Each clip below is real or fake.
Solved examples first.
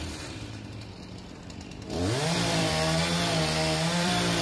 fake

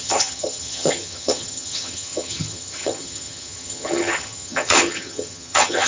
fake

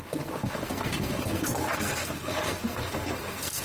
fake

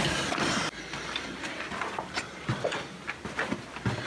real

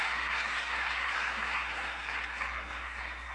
fake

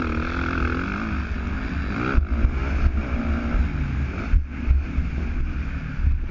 real